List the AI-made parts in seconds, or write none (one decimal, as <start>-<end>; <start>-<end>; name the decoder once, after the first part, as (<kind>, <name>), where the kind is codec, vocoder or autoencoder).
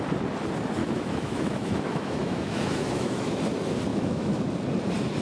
0.8-3.4 (autoencoder, DAC-VAE); 3.9-4.4